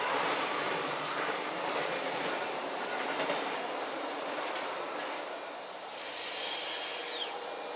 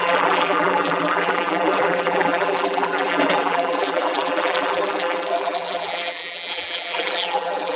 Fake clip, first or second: second